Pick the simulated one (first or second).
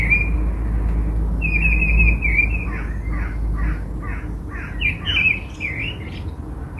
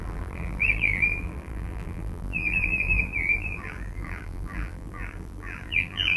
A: second